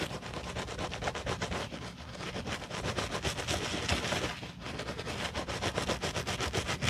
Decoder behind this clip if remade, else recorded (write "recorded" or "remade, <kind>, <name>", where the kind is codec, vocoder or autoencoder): recorded